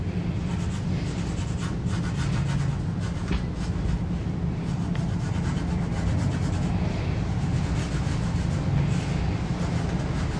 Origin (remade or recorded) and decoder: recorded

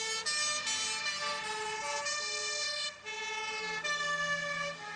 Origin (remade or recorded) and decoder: recorded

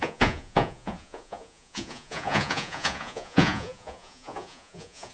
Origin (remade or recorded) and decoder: remade, vocoder, Vocos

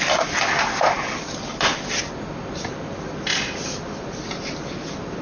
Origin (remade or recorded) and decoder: recorded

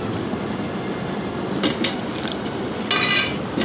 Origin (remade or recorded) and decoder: recorded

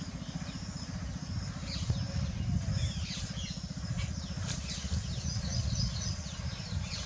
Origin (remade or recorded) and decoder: recorded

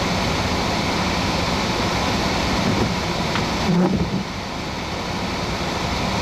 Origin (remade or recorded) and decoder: recorded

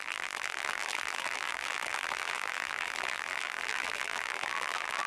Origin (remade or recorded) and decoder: remade, vocoder, BigVGAN v2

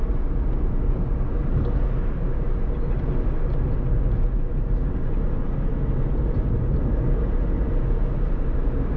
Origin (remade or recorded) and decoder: recorded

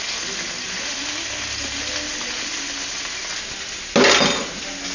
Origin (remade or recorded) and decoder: recorded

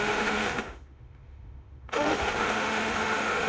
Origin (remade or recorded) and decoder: remade, autoencoder, DAC-VAE